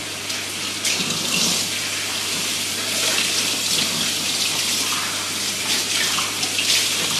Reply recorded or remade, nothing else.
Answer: recorded